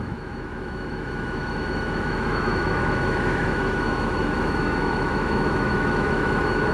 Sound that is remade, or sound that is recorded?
remade